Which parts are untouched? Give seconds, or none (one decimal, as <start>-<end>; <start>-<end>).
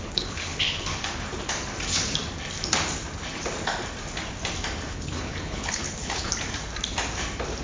0.9-4.9; 6.3-7.6